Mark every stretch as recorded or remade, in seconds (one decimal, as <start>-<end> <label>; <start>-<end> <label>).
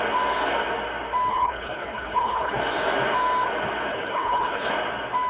0.0-1.3 recorded; 1.3-2.6 remade; 2.6-3.9 recorded; 3.9-4.7 remade; 4.7-5.3 recorded